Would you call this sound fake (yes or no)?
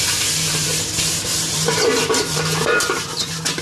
yes